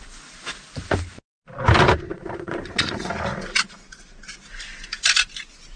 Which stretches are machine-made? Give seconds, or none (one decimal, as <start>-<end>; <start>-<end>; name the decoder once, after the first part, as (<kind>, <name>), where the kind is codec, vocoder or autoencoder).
2.1-3.1 (vocoder, Vocos)